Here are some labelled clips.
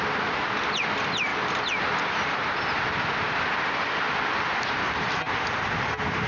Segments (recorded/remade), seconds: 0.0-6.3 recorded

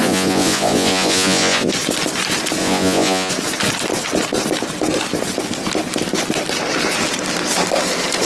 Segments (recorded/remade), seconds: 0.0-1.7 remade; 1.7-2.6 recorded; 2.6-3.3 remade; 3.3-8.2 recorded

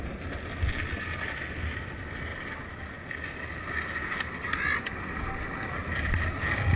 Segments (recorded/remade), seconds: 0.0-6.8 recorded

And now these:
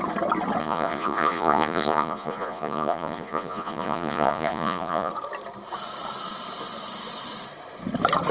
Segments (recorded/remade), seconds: 0.0-0.6 recorded; 0.6-5.1 remade; 5.1-8.3 recorded

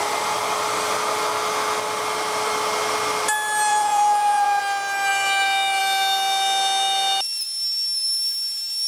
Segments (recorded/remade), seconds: 0.0-3.7 recorded; 3.7-4.6 remade; 4.6-8.9 recorded

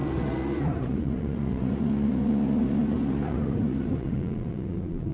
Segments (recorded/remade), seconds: 0.0-5.1 remade